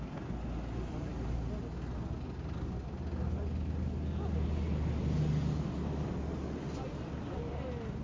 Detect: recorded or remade recorded